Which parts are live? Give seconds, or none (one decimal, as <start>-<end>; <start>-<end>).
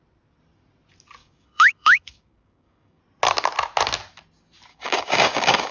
0.0-1.2; 3.0-4.7